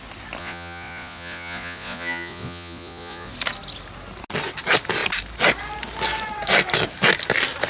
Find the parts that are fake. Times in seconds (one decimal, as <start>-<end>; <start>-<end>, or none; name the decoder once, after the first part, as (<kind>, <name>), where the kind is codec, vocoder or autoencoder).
0.4-3.3 (vocoder, Vocos)